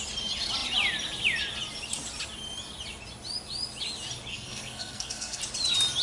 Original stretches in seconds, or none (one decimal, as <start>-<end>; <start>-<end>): 0.0-4.3; 5.4-6.0